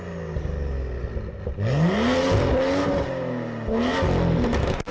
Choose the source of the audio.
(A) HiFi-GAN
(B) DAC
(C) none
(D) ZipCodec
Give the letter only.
C